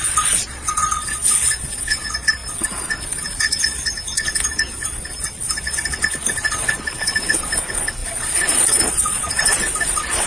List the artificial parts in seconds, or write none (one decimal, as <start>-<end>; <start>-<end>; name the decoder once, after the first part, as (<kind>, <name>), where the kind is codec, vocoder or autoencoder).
0.0-10.3 (vocoder, Vocos)